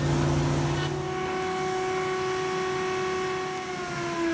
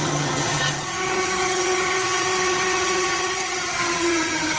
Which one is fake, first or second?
second